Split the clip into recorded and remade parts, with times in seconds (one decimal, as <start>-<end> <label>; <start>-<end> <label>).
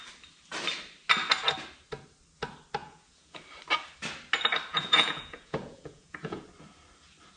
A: 0.0-2.8 recorded; 2.8-3.4 remade; 3.4-4.7 recorded; 4.7-6.4 remade; 6.4-7.4 recorded